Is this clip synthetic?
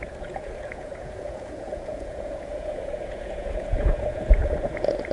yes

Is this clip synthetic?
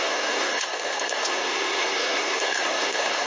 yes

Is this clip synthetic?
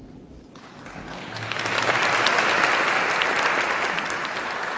no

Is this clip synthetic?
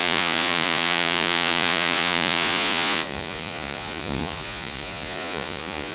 yes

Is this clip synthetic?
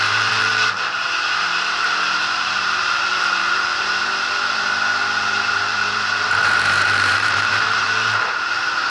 yes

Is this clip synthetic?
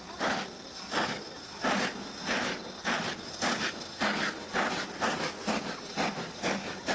no